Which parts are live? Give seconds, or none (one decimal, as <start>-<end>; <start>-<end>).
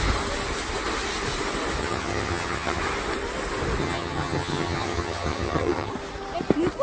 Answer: 0.0-1.8; 2.8-3.8; 5.9-6.8